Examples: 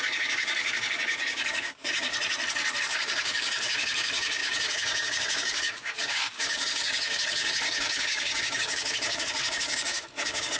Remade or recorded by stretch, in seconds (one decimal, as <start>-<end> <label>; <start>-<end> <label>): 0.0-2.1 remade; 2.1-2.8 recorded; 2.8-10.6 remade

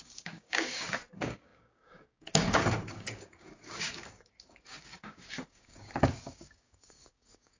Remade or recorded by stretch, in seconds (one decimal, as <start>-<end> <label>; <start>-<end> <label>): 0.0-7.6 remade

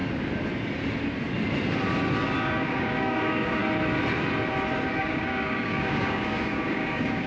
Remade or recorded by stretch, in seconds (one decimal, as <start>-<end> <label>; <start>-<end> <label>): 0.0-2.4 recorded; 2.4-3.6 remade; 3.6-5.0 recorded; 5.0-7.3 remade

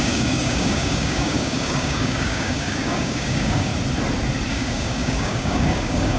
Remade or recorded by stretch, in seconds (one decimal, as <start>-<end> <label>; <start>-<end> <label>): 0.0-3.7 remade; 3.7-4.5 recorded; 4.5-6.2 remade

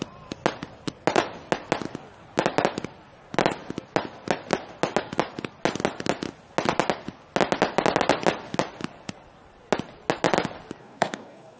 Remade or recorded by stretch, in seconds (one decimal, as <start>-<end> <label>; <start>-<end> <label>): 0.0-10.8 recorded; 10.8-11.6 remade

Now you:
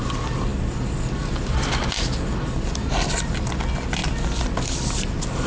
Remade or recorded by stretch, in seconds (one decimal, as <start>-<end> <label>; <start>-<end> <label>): 0.0-5.5 recorded

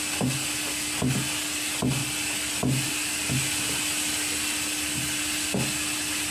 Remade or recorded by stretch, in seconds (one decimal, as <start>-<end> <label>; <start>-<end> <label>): 0.0-6.3 recorded

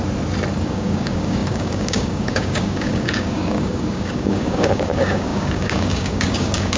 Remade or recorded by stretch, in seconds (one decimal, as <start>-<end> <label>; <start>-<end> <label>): 0.0-0.6 recorded; 0.6-6.8 remade